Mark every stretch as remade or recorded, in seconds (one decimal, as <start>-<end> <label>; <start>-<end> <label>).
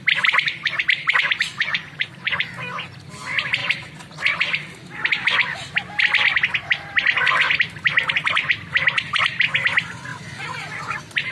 0.0-1.5 recorded; 1.5-2.5 remade; 2.5-11.3 recorded